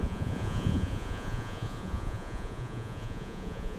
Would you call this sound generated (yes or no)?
yes